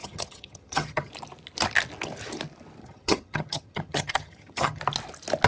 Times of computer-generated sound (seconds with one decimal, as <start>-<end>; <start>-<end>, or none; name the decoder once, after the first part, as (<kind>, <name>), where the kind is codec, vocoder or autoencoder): 0.0-1.1 (vocoder, HiFi-GAN); 2.8-4.8